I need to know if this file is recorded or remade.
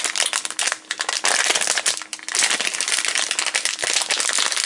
recorded